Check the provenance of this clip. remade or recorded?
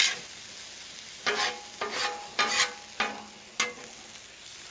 recorded